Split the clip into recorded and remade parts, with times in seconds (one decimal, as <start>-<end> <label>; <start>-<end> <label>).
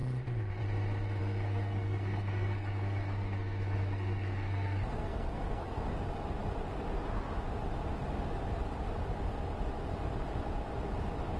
0.0-1.2 recorded; 1.2-6.0 remade; 6.0-11.4 recorded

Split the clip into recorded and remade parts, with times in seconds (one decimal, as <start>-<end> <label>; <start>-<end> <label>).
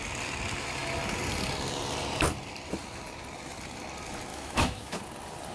0.0-4.3 recorded; 4.3-5.0 remade; 5.0-5.5 recorded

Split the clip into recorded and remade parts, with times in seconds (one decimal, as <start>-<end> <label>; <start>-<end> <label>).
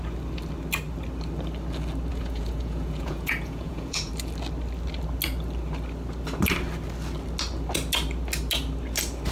0.0-2.1 recorded; 2.1-4.1 remade; 4.1-9.3 recorded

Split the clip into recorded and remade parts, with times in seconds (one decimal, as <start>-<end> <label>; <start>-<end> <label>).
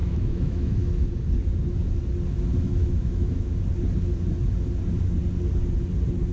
0.0-1.1 remade; 1.1-2.7 recorded; 2.7-3.6 remade; 3.6-6.3 recorded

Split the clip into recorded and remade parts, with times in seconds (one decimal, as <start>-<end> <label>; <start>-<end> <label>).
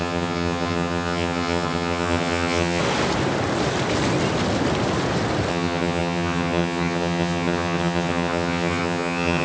0.0-2.8 remade; 2.8-5.5 recorded; 5.5-9.4 remade